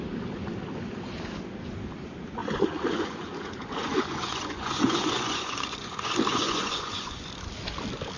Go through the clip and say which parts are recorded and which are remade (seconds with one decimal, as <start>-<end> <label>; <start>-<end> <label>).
0.0-2.4 recorded; 2.4-7.3 remade; 7.3-8.2 recorded